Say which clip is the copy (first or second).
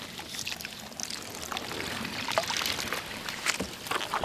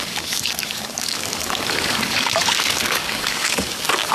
second